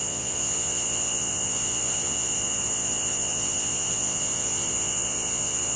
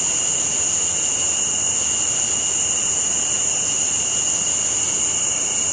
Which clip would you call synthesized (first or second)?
first